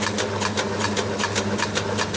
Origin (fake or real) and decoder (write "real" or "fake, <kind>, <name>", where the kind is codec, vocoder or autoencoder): real